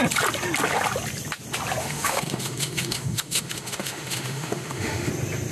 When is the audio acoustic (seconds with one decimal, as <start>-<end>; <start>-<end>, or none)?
0.0-1.8; 5.1-5.5